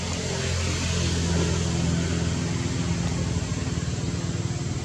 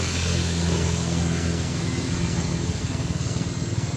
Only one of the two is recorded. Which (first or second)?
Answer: first